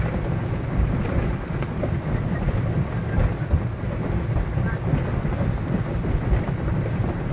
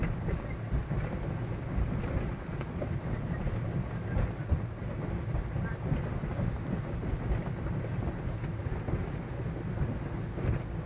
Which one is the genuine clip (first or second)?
second